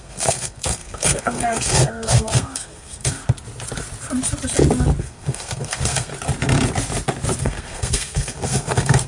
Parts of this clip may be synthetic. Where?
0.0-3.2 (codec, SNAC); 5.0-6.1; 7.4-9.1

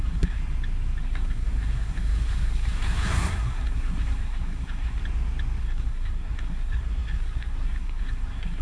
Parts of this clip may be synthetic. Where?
0.0-0.4 (codec, SNAC); 1.0-5.0; 5.6-8.6

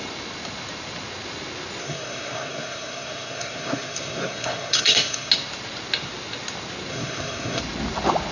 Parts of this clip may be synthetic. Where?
1.8-5.3 (codec, SNAC); 6.9-7.6